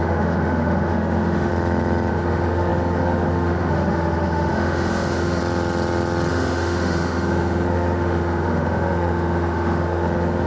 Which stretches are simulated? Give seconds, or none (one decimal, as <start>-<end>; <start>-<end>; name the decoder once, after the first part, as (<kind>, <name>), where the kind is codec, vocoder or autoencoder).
0.0-1.5 (autoencoder, DAC-VAE); 2.1-5.4; 6.3-10.5